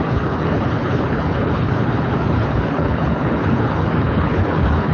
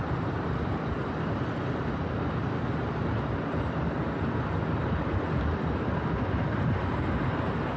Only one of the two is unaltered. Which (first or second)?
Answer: second